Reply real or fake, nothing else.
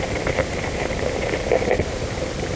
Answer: fake